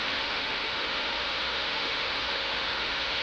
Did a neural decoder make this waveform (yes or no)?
yes